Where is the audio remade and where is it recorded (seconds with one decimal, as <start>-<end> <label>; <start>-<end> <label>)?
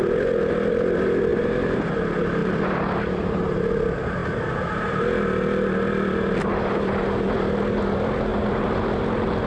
0.0-1.3 recorded; 1.3-1.9 remade; 1.9-2.4 recorded; 2.4-3.7 remade; 3.7-8.3 recorded; 8.3-9.0 remade; 9.0-9.5 recorded